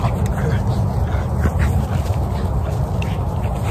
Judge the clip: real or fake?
real